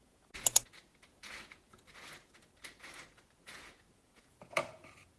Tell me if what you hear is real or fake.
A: fake